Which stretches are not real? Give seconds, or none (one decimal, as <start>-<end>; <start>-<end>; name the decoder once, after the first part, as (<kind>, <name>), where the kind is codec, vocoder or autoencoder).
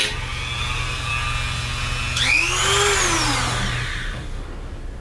none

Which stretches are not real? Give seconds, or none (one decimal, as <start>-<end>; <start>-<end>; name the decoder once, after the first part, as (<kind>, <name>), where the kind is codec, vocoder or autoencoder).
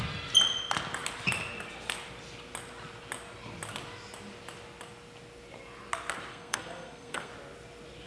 6.3-7.3 (codec, SNAC)